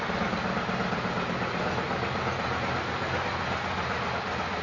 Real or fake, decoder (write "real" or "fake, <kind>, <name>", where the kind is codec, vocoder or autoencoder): real